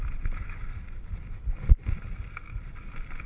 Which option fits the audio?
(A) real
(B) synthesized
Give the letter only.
A